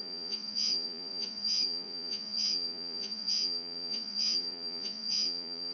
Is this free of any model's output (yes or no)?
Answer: no